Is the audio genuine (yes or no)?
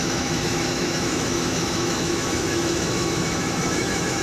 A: no